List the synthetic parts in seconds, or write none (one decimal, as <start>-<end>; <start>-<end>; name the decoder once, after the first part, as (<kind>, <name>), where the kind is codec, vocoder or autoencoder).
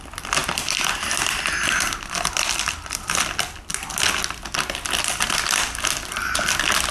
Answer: none